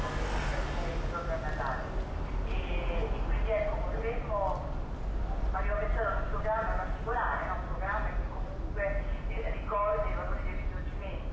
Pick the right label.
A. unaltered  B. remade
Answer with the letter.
A